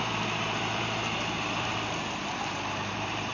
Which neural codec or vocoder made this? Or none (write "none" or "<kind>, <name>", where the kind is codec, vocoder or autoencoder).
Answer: vocoder, BigVGAN v2